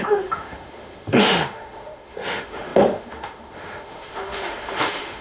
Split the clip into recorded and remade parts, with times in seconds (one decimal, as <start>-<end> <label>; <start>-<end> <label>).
0.0-5.2 remade